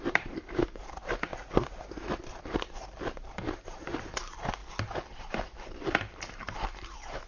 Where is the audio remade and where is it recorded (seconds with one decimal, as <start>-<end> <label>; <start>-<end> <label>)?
0.0-1.3 remade; 1.3-2.2 recorded; 2.2-4.6 remade; 4.6-5.1 recorded; 5.1-7.3 remade